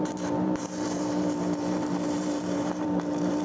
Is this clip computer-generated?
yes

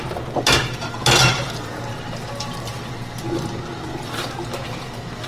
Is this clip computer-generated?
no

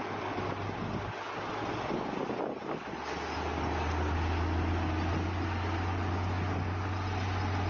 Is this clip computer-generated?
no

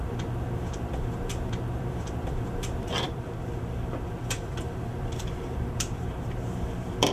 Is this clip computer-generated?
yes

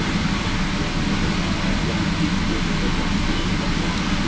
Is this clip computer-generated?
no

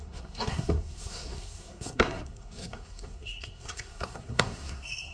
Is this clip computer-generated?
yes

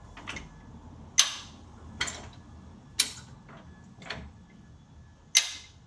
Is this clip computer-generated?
no